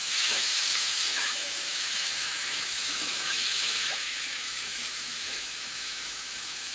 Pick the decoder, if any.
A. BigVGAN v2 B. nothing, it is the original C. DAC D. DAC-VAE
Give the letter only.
D